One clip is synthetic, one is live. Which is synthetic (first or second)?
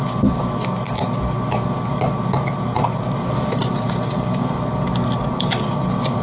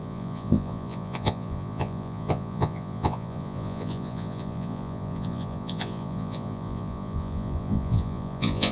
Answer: second